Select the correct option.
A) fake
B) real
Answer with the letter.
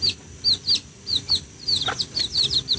A